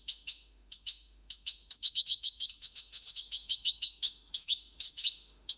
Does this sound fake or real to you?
fake